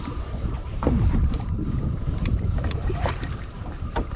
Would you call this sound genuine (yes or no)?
no